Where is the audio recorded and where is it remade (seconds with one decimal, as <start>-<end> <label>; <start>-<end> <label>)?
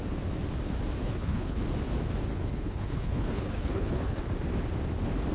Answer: 0.0-1.0 recorded; 1.0-1.6 remade; 1.6-2.3 recorded; 2.3-4.2 remade; 4.2-5.3 recorded